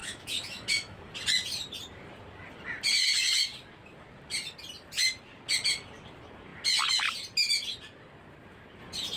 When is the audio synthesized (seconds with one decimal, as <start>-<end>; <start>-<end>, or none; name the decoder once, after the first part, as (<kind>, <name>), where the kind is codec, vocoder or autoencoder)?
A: 0.0-1.0 (autoencoder, DAC-VAE)